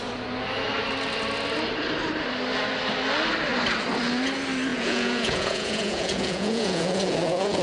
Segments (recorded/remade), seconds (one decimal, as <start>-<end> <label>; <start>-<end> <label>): 0.0-4.7 recorded; 4.7-7.6 remade